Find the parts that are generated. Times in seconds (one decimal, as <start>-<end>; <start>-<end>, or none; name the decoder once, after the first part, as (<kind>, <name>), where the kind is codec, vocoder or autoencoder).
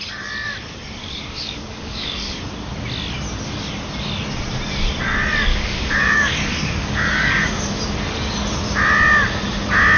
1.0-2.4 (codec, DAC); 5.5-7.8